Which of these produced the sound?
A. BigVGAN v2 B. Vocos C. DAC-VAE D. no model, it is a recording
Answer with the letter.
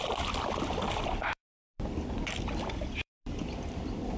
A